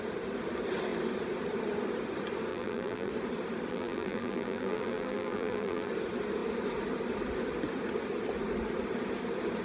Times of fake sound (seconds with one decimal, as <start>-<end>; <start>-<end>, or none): 2.5-3.1; 3.7-5.9